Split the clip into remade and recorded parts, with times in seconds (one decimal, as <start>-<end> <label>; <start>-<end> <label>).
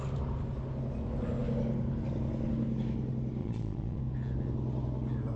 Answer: 0.0-3.4 recorded; 3.4-4.0 remade; 4.0-5.4 recorded